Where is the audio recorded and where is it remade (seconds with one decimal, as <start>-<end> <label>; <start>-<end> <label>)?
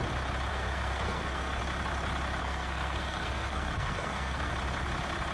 0.0-0.5 recorded; 0.5-1.6 remade; 1.6-2.4 recorded; 2.4-4.5 remade; 4.5-5.3 recorded